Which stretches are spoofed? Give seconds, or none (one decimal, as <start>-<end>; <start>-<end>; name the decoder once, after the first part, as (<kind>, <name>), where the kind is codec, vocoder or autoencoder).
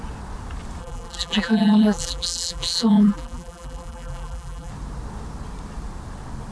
0.8-4.7 (vocoder, BigVGAN v2)